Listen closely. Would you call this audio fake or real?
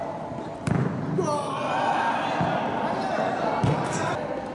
real